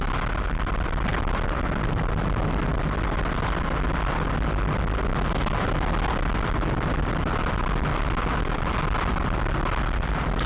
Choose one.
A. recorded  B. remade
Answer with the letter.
A